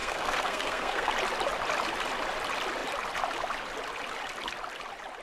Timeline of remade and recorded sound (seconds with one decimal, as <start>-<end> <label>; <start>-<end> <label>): 0.0-1.1 remade; 1.1-5.2 recorded